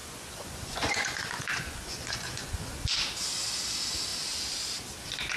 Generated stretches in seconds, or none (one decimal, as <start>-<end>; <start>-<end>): 0.0-2.8